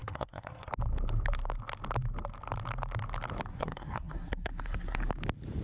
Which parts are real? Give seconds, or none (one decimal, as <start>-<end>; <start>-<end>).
0.7-3.5; 5.0-5.6